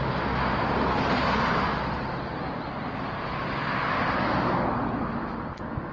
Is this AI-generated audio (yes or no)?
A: no